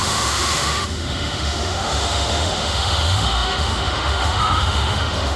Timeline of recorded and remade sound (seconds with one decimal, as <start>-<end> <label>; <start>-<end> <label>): 0.0-5.4 remade